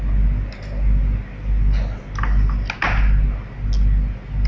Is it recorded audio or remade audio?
recorded